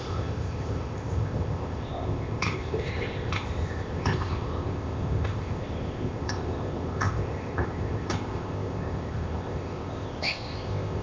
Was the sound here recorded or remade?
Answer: remade